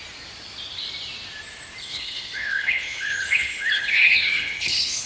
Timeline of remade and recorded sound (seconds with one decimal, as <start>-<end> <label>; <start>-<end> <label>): 0.0-1.8 recorded; 1.8-5.1 remade